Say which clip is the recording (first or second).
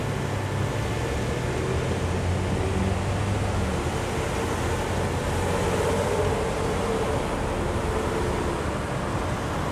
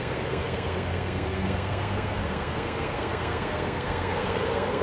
first